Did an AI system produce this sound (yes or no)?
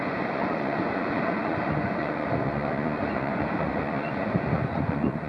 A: yes